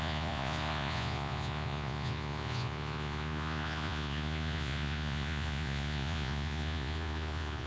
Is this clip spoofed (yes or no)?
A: yes